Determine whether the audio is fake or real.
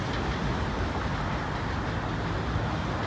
real